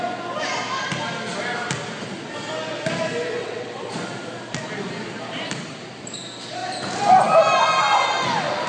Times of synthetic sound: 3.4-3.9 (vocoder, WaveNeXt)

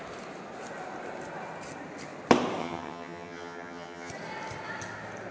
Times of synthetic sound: 2.6-4.1 (vocoder, HiFi-GAN)